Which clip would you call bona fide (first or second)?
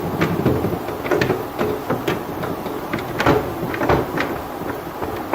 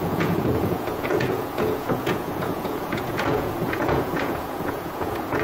first